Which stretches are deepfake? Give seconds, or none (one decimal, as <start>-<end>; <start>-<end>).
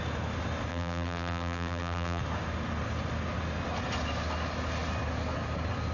0.7-2.2